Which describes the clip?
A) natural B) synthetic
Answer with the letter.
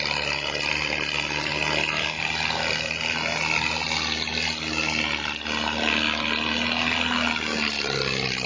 A